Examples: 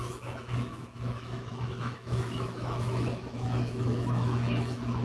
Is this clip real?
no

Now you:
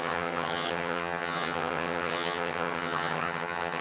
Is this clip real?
no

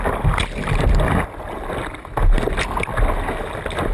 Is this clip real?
yes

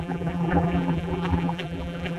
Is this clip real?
no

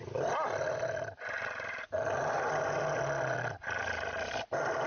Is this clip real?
yes